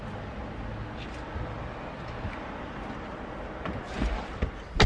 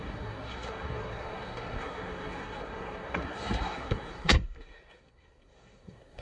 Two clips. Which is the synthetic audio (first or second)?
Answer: second